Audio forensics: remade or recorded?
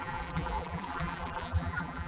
remade